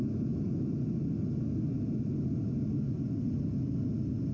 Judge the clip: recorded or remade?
recorded